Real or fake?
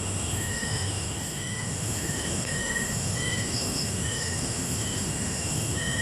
fake